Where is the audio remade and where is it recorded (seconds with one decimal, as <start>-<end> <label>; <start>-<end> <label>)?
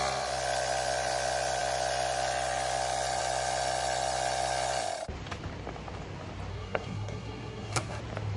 0.0-6.5 recorded; 6.5-8.0 remade; 8.0-8.4 recorded